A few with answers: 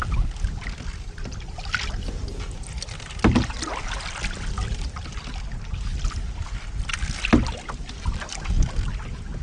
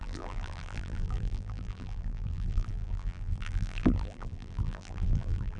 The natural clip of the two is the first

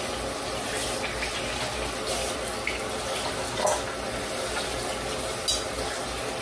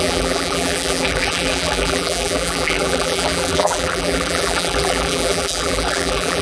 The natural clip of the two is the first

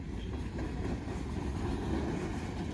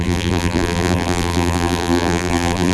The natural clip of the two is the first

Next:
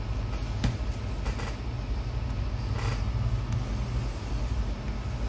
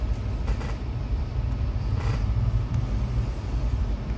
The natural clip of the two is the first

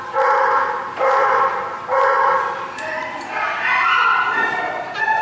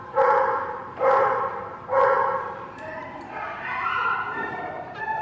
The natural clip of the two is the first